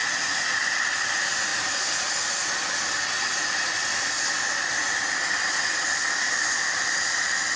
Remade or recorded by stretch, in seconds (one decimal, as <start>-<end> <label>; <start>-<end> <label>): 0.0-0.8 remade; 0.8-7.6 recorded